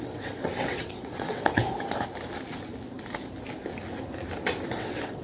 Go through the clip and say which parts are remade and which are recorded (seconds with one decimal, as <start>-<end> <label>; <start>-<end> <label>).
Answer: 0.0-1.6 remade; 1.6-4.7 recorded; 4.7-5.2 remade